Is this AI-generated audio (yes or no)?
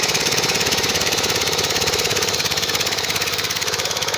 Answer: yes